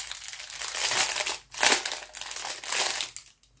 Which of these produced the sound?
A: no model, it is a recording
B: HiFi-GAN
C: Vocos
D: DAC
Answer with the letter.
A